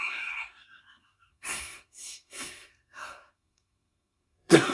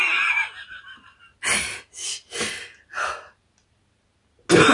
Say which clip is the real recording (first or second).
second